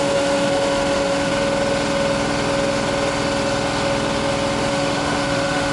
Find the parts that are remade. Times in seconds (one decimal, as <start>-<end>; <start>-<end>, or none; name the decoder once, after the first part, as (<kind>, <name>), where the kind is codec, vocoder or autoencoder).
0.0-1.3 (autoencoder, DAC-VAE); 4.7-5.7